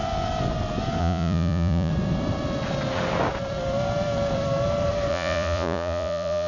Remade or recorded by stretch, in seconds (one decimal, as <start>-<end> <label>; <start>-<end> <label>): 0.0-1.0 recorded; 1.0-1.9 remade; 1.9-5.1 recorded; 5.1-6.5 remade